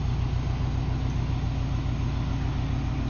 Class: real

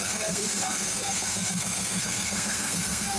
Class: fake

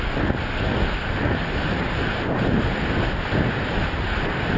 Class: real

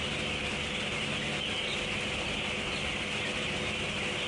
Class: real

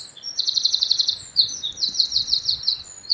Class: fake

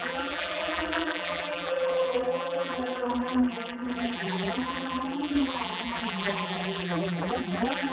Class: fake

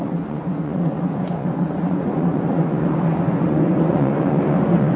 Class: fake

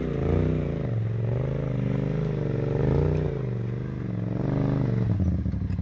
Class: real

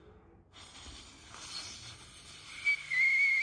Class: real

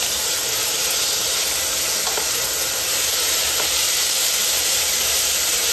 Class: fake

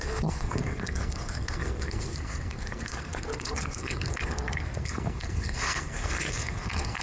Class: fake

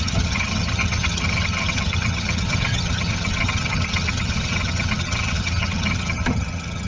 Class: fake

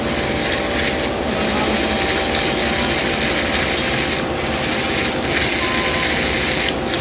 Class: real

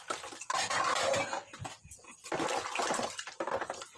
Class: real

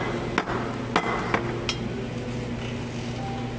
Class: real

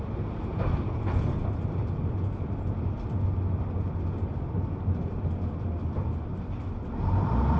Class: real